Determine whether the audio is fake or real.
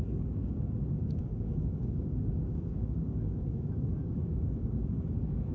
fake